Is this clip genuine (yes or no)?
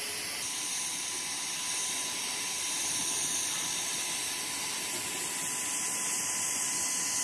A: no